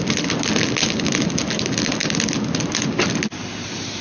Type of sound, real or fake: real